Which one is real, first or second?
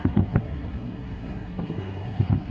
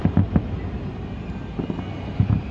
second